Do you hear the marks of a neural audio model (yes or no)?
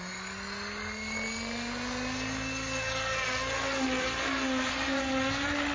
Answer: no